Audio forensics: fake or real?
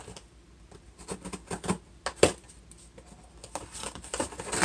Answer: real